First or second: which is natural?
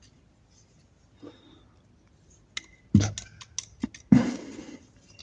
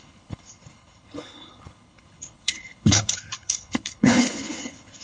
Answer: first